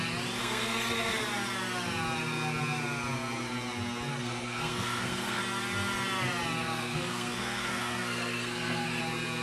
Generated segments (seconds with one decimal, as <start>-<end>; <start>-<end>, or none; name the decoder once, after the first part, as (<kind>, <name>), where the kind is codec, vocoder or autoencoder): 0.4-1.2 (codec, SNAC); 4.1-5.4; 6.6-9.0